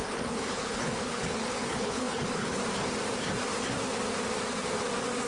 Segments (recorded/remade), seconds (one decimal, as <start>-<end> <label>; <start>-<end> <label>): 0.0-2.6 remade; 2.6-5.3 recorded